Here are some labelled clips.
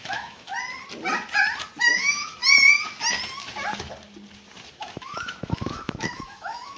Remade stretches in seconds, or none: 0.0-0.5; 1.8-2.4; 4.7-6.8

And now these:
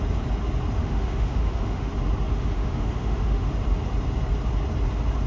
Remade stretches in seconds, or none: 0.8-1.9; 2.3-3.5

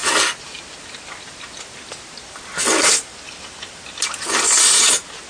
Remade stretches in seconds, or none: none

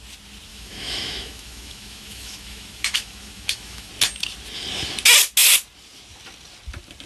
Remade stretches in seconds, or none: 0.5-3.9

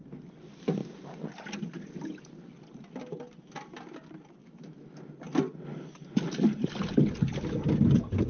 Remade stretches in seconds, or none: 4.4-5.0